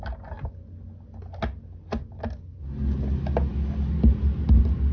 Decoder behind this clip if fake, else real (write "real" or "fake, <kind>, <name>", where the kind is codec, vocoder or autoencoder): real